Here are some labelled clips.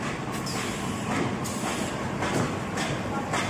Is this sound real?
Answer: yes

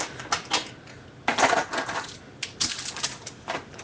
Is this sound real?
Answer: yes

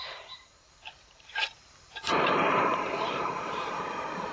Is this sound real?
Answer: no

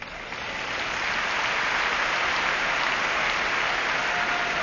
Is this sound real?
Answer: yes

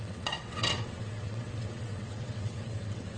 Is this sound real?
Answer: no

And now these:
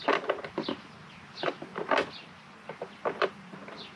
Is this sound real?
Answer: yes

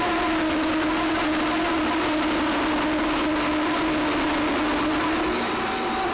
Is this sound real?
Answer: yes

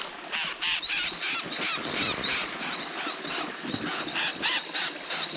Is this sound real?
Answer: yes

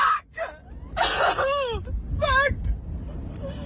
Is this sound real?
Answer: yes